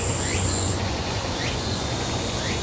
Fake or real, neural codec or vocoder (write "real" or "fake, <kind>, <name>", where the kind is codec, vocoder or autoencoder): fake, vocoder, Vocos